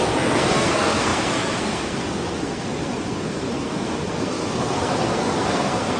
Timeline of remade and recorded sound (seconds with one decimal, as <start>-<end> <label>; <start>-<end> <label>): 0.0-6.0 remade